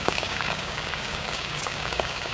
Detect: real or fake fake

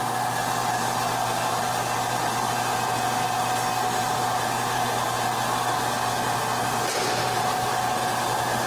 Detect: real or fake real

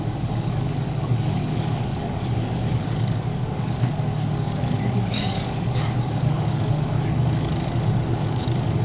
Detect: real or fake fake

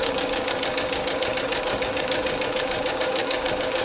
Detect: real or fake fake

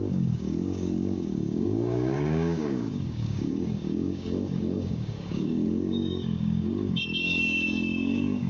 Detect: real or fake fake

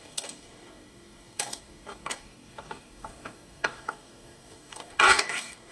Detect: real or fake fake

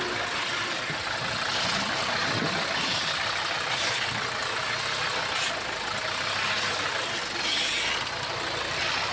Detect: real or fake real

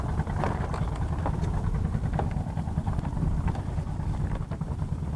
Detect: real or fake real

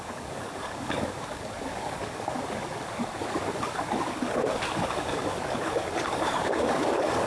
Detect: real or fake fake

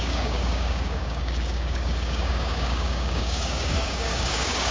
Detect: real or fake fake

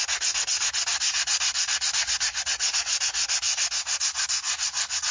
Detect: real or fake real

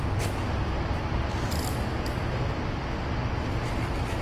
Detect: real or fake real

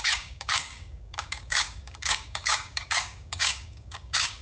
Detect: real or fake fake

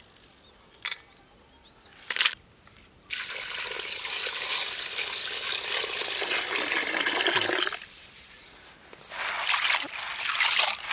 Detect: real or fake real